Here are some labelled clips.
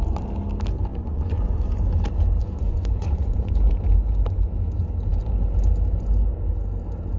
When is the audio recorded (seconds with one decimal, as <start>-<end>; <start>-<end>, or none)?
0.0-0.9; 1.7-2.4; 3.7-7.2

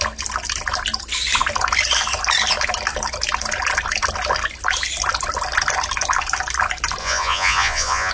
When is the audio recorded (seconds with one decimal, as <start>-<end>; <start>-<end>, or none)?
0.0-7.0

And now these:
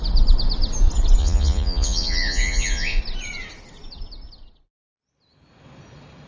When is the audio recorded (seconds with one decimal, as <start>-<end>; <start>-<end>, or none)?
0.0-1.2; 3.0-6.3